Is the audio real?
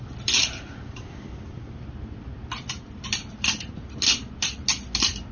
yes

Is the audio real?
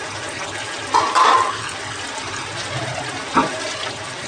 yes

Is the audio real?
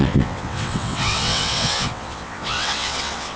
no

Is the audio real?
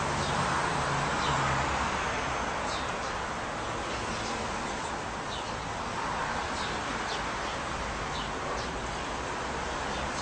yes